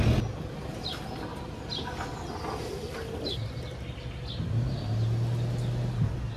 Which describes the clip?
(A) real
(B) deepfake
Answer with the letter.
A